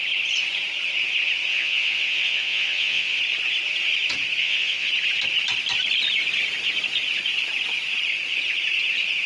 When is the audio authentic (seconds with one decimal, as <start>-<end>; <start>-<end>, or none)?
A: 0.0-1.5; 3.2-4.4; 4.9-9.3